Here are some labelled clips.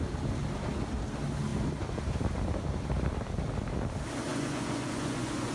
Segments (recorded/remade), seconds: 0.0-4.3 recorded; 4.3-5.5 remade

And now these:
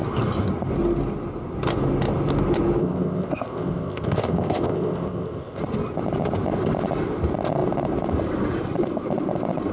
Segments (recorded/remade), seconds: 0.0-2.8 recorded; 2.8-5.6 remade; 5.6-9.7 recorded

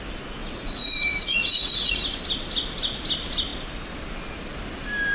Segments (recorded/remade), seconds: 0.0-0.4 recorded; 0.4-2.0 remade; 2.0-5.1 recorded

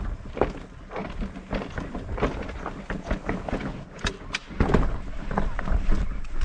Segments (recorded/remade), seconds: 0.0-6.4 recorded